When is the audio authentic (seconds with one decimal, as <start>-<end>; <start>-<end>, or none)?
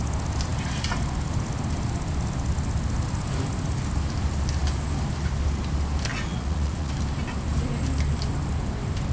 0.0-6.1; 6.9-9.1